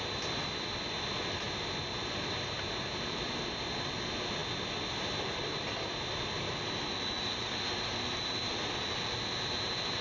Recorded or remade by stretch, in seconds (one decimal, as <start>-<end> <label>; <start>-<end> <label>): 0.0-10.0 recorded